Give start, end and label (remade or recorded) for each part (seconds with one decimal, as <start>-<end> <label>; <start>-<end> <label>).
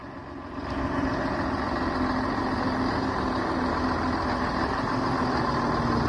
0.0-6.1 recorded